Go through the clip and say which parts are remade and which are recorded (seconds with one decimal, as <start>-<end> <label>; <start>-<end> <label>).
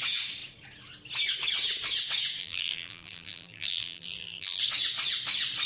0.0-2.4 recorded; 2.4-4.6 remade; 4.6-5.7 recorded